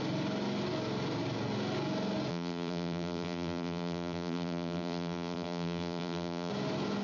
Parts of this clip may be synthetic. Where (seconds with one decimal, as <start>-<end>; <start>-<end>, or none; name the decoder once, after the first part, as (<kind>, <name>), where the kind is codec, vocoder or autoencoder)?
2.3-6.5 (vocoder, BigVGAN v2)